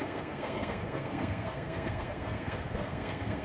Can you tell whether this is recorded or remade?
remade